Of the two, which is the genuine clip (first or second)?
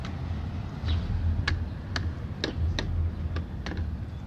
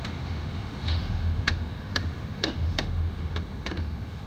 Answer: first